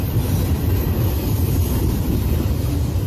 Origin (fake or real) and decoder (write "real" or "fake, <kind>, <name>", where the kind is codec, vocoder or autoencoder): fake, vocoder, BigVGAN v2